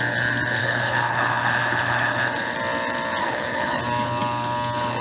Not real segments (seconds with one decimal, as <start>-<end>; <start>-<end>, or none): 0.6-2.2; 3.2-3.8